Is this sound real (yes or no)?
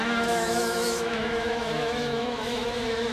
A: no